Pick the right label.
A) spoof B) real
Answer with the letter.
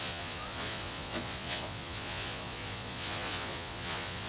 A